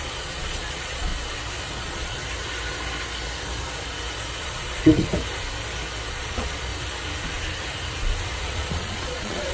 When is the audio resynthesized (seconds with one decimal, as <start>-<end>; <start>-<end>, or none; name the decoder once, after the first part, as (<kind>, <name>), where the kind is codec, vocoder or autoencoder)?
0.0-1.1 (vocoder, Vocos); 1.8-2.2; 4.4-5.1; 6.1-6.7; 8.4-9.5